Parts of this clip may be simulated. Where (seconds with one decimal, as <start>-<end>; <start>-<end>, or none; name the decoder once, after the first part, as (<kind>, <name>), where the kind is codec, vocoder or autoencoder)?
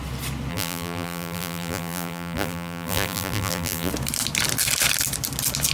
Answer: 0.5-3.9 (vocoder, BigVGAN v2)